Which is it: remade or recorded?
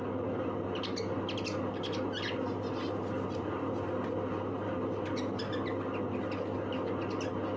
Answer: recorded